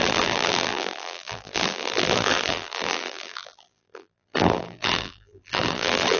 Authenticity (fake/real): fake